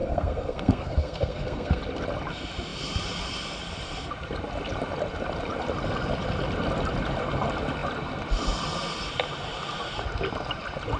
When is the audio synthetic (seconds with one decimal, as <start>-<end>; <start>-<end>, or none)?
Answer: 0.0-1.8